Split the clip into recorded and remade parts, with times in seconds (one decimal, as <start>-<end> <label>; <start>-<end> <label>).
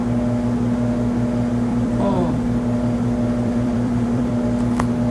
0.0-1.7 recorded; 1.7-4.3 remade; 4.3-5.1 recorded